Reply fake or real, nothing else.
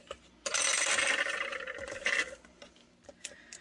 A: real